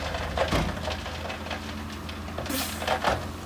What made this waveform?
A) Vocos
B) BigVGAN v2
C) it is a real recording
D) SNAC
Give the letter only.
C